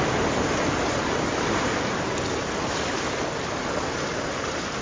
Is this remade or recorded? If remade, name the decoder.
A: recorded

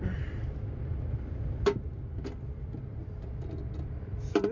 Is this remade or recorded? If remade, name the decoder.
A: recorded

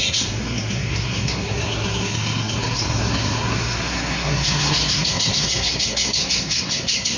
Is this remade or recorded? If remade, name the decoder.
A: remade, codec, SNAC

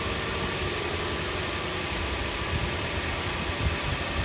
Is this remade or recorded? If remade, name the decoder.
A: recorded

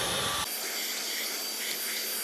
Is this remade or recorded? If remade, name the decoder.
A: recorded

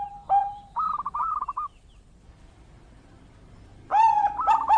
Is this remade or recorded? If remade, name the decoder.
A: remade, vocoder, BigVGAN v2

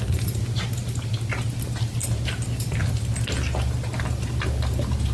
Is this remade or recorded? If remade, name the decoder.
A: recorded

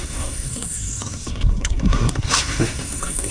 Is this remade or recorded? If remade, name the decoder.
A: remade, codec, SNAC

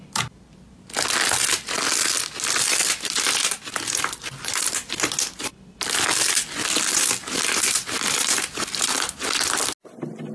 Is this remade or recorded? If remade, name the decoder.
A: recorded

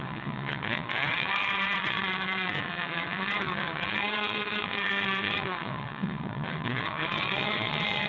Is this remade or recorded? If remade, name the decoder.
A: remade, vocoder, WaveNeXt